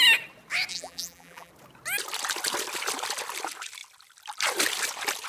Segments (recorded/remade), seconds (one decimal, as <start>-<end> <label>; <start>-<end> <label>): 0.0-0.7 recorded; 0.7-1.5 remade; 1.5-5.3 recorded